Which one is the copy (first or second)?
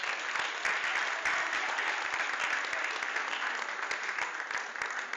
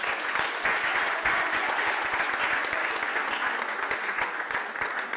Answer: second